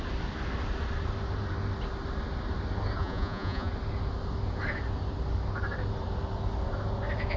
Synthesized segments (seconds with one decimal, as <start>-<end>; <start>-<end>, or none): 3.0-3.7